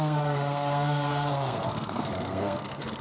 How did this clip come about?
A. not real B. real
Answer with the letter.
A